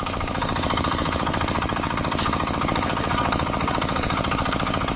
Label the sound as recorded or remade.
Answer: remade